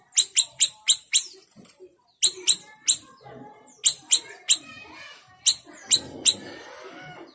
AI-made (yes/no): no